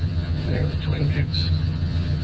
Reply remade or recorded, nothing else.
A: remade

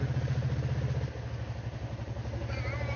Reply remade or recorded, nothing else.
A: recorded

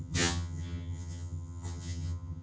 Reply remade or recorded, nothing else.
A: remade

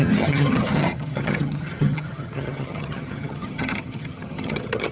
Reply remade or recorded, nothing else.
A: remade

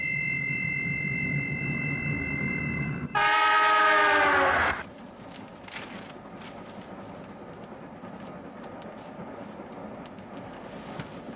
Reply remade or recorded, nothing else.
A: recorded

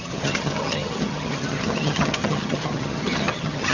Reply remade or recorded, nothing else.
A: remade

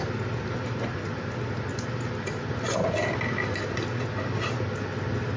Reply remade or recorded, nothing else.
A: recorded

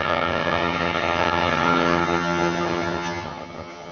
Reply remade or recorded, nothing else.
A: remade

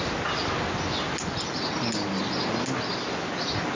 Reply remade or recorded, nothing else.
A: recorded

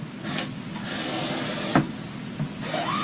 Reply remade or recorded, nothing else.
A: recorded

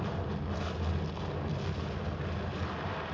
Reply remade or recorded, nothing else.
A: recorded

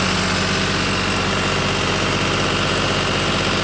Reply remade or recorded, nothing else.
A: recorded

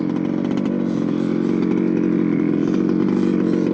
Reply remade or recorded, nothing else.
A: recorded